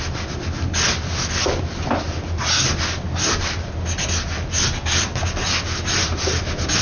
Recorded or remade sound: recorded